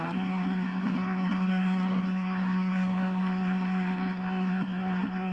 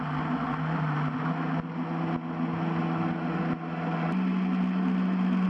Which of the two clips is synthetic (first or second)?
first